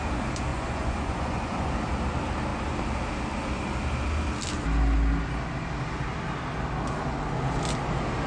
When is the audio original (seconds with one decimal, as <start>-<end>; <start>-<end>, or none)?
0.0-0.5; 1.7-8.3